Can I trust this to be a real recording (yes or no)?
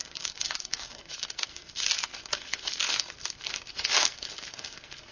no